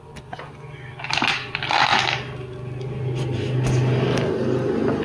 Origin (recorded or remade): recorded